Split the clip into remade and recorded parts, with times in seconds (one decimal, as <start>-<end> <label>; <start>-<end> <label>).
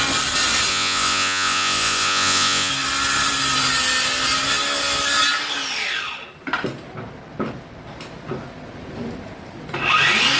0.0-0.7 recorded; 0.7-2.7 remade; 2.7-10.4 recorded